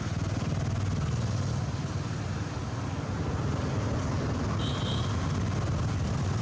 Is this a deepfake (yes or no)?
no